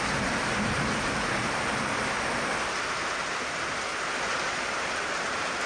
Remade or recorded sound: recorded